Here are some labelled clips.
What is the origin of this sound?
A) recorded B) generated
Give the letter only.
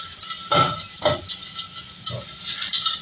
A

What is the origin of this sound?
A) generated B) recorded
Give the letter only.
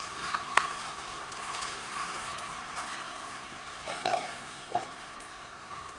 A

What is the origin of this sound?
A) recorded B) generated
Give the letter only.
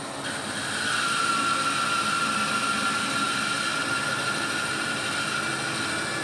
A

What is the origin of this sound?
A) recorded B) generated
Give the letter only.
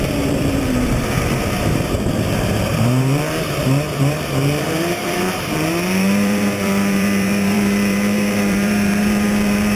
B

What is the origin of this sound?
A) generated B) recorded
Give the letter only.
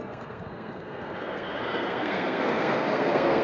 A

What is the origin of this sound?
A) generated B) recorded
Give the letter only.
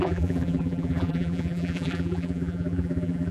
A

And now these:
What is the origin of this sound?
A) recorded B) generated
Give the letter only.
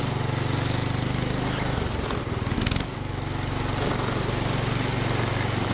A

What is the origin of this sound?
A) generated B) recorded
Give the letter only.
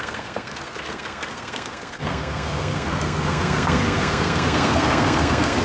A